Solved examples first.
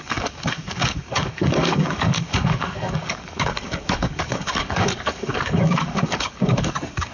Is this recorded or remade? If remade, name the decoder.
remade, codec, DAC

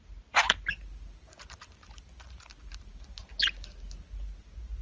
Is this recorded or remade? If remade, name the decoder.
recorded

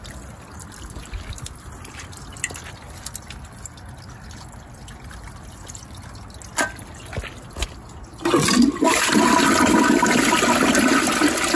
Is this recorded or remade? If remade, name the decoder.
recorded